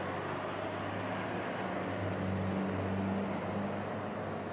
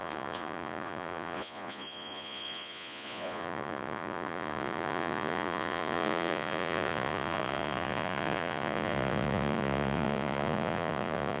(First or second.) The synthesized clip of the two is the second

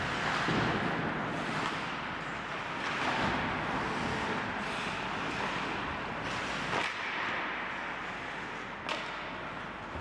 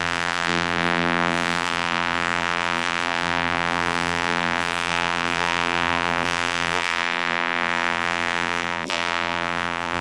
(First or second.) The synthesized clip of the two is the second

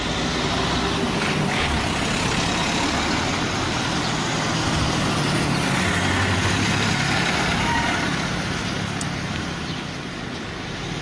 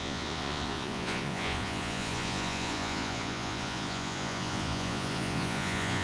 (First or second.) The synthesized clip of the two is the second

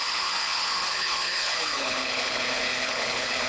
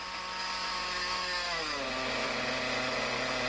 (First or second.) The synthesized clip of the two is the first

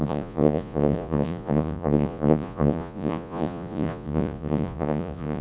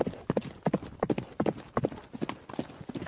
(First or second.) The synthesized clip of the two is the first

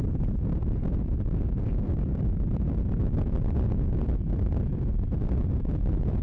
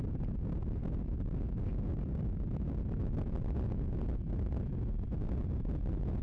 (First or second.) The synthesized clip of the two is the first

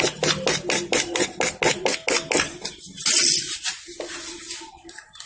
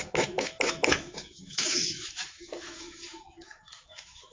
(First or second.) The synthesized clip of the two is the second